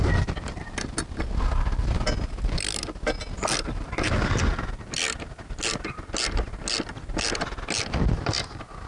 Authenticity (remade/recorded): recorded